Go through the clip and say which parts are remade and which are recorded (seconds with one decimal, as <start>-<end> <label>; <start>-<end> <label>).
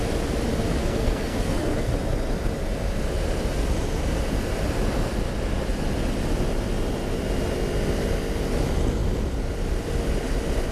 0.0-0.8 recorded; 0.8-1.9 remade; 1.9-10.7 recorded